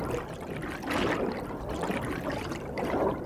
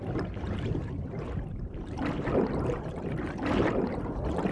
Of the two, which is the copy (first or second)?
second